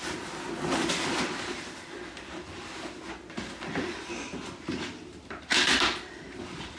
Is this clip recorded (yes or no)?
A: yes